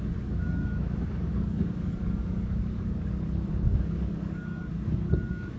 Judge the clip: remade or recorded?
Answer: remade